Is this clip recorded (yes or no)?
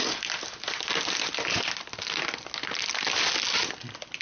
yes